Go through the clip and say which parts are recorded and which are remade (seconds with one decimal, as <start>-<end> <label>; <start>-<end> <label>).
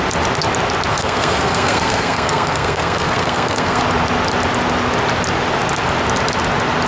0.0-0.9 recorded; 0.9-3.8 remade; 3.8-6.9 recorded